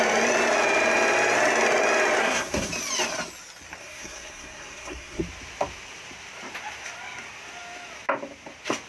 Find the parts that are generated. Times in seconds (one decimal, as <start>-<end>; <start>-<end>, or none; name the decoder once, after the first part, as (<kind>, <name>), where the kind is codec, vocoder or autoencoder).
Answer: 2.2-2.7 (codec, SNAC); 3.8-5.2